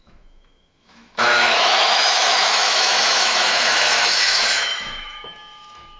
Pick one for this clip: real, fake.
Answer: fake